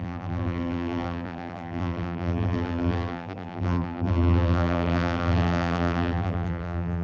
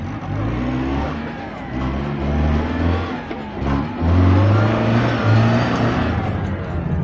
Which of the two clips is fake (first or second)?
first